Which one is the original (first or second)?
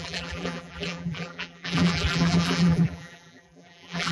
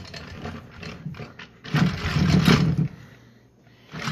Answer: second